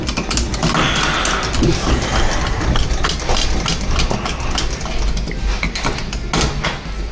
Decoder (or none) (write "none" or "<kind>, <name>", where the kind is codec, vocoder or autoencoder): none